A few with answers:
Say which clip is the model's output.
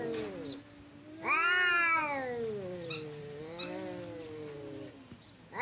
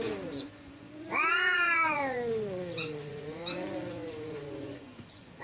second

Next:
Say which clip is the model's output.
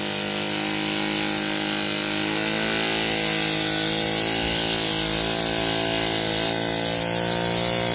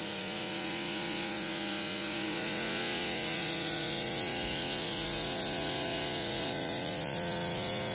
second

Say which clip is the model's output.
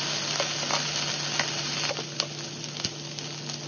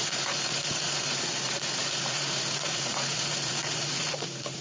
second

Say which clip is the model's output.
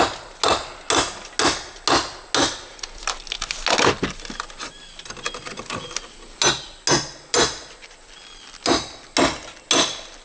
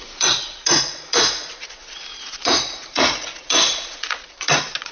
second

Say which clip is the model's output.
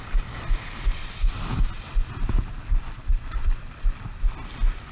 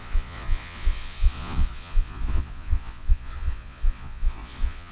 second